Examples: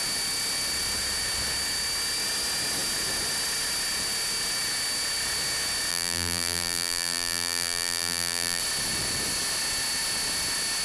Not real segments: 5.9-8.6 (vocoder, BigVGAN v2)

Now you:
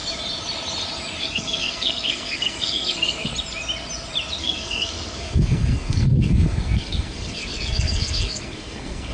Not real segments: 1.2-3.3 (codec, SNAC); 4.4-9.1